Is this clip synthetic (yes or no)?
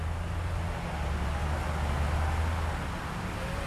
no